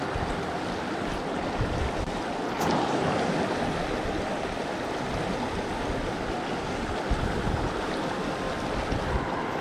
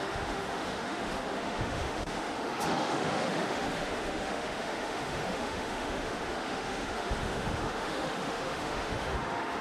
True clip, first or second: first